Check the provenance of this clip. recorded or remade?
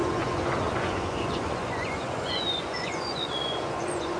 remade